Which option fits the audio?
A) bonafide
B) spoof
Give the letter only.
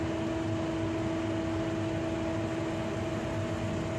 A